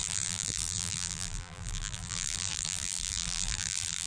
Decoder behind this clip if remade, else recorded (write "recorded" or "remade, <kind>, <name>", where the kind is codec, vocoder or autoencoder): remade, vocoder, BigVGAN v2